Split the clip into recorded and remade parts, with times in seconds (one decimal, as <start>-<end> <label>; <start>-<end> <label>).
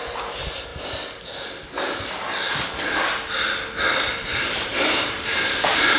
0.0-0.7 remade; 0.7-4.1 recorded; 4.1-6.0 remade